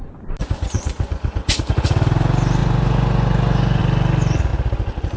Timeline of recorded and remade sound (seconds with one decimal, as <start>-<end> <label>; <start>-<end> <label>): 0.0-0.4 recorded; 0.4-1.5 remade; 1.5-2.6 recorded; 2.6-3.8 remade; 3.8-5.2 recorded